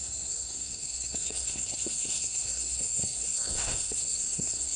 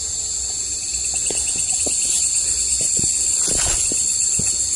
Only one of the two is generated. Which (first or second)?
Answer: first